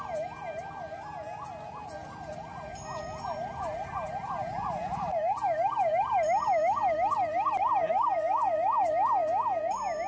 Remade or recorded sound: recorded